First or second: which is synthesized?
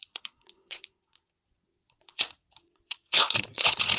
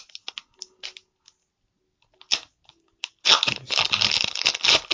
first